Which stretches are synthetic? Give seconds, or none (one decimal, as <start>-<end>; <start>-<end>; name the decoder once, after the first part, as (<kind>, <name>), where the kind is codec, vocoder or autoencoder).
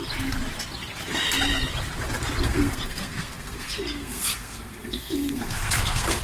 2.4-6.2 (codec, SNAC)